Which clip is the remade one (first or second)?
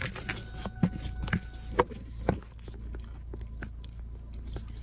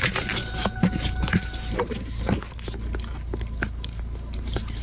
second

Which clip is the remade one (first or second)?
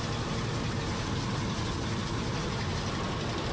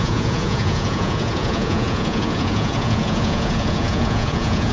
second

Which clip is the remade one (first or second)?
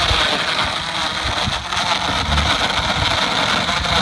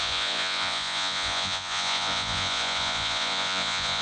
second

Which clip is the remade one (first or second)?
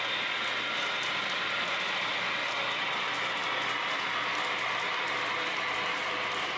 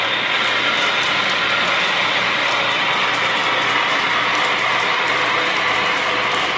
second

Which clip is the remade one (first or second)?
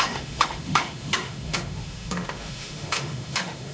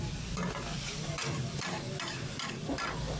first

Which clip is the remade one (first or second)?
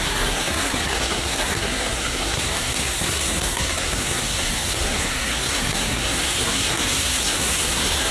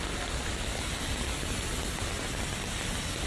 first